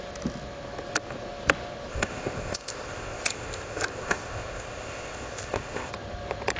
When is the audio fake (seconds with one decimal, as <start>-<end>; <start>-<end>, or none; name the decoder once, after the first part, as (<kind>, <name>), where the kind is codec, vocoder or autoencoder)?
1.9-5.9 (codec, ZipCodec)